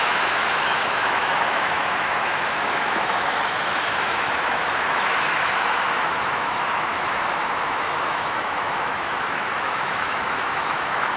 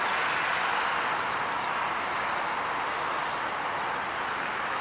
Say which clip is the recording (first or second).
second